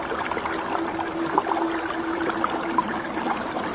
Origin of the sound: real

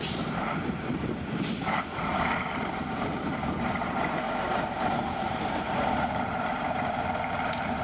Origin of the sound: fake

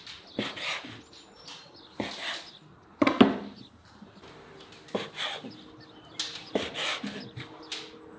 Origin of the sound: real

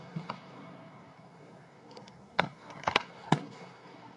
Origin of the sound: fake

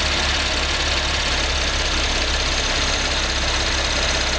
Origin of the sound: real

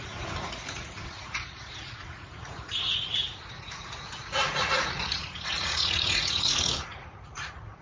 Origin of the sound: fake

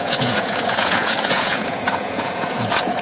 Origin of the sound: fake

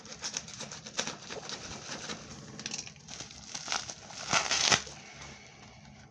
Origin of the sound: real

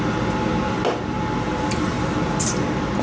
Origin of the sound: real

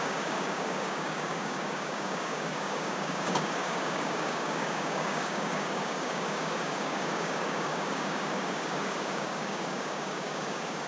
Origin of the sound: fake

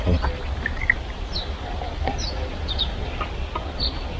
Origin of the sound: real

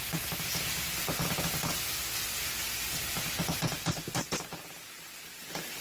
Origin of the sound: real